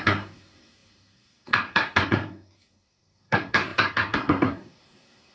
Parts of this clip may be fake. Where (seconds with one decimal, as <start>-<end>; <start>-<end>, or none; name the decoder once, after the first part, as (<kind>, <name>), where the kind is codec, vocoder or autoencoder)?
0.0-5.3 (codec, SNAC)